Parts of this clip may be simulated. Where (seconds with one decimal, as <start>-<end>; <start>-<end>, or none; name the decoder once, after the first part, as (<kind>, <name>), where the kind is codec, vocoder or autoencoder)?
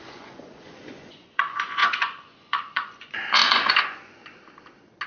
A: 0.0-4.2 (vocoder, Vocos)